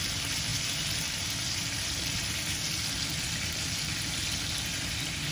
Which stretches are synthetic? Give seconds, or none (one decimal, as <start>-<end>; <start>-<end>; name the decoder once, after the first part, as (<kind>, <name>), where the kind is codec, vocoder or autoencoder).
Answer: none